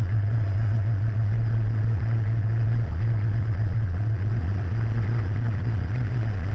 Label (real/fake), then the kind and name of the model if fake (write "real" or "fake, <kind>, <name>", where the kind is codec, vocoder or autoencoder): fake, vocoder, Vocos